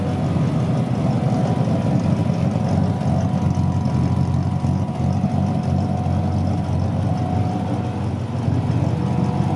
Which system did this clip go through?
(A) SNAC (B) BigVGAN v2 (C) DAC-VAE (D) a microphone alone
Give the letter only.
D